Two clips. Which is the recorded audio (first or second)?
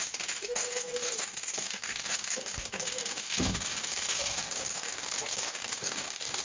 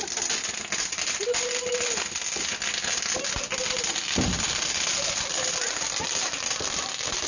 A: second